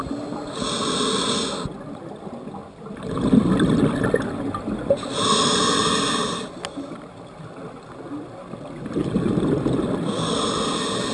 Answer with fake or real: real